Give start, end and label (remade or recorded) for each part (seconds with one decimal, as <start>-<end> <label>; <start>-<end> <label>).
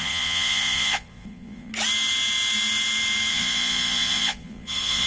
0.0-1.7 remade; 1.7-3.3 recorded; 3.3-5.1 remade